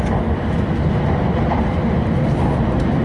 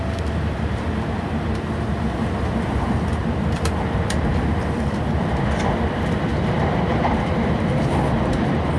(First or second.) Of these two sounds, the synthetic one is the second